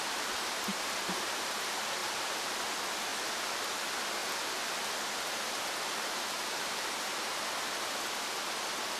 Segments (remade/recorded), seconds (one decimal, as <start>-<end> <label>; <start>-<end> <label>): 0.0-2.0 recorded; 2.0-2.6 remade; 2.6-4.2 recorded; 4.2-8.1 remade; 8.1-9.0 recorded